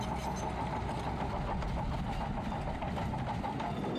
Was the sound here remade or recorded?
recorded